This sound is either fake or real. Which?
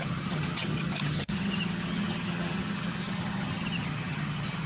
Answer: fake